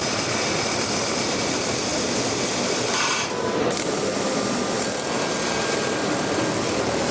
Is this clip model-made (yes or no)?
no